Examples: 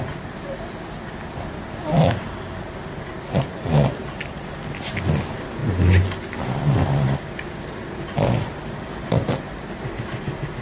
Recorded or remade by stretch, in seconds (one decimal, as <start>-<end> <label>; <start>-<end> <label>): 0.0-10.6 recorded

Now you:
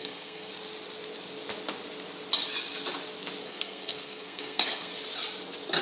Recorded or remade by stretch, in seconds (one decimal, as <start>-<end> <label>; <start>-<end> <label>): 0.0-0.5 remade; 0.5-3.4 recorded; 3.4-4.9 remade; 4.9-5.8 recorded

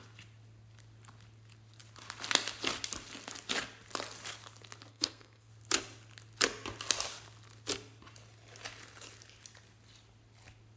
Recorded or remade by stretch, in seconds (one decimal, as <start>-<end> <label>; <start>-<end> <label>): 0.0-4.9 recorded; 4.9-5.5 remade; 5.5-10.8 recorded

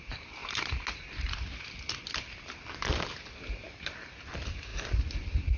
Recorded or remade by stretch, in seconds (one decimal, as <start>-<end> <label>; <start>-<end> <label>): 0.0-5.6 recorded

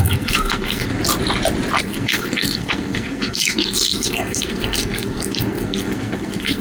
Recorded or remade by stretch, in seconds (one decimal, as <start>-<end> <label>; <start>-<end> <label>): 0.0-0.9 remade; 0.9-1.8 recorded; 1.8-6.6 remade

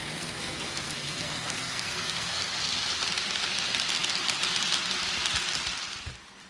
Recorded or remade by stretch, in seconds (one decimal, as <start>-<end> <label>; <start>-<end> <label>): 0.0-2.4 remade; 2.4-6.5 recorded